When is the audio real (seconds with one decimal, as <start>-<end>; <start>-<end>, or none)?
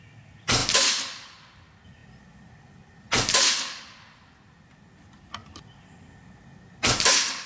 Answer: 0.0-7.5